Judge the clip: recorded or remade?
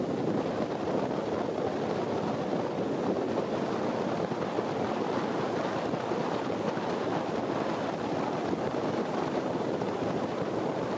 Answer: recorded